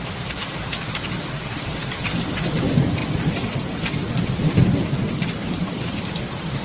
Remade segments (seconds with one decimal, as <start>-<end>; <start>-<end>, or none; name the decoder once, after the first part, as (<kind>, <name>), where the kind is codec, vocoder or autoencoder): 0.0-3.0 (vocoder, BigVGAN v2); 3.7-6.6